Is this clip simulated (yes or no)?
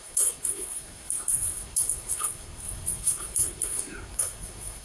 yes